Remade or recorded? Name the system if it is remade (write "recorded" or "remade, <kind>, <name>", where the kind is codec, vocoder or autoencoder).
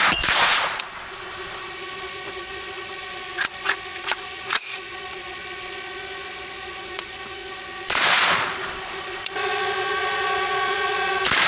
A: remade, vocoder, Vocos